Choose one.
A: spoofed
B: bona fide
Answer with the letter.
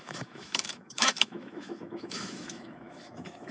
A